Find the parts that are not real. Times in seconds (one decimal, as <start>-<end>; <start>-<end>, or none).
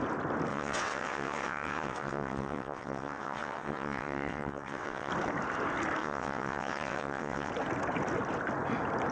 0.5-5.1; 6.0-7.5